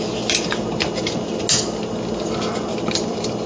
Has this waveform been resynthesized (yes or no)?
no